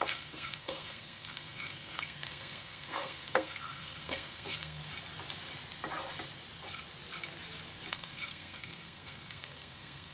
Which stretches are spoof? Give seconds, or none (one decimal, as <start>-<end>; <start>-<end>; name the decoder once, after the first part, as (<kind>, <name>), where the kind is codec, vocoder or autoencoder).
0.0-4.8 (codec, SNAC); 7.9-10.1